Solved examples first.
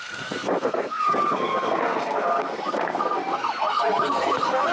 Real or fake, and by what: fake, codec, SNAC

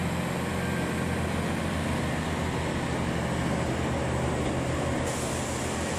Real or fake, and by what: real